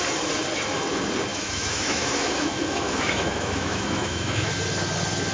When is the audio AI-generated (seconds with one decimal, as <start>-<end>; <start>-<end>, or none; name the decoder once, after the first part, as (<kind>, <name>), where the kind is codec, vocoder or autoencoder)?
1.3-4.5 (autoencoder, DAC-VAE)